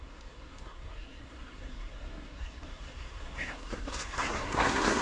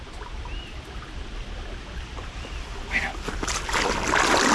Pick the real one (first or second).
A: second